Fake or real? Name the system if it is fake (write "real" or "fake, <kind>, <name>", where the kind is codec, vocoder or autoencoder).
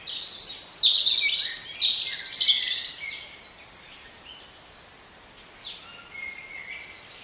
real